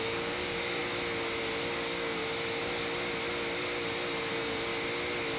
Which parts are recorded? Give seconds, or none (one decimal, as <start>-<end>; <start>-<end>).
0.8-1.7; 2.2-4.3; 4.7-5.4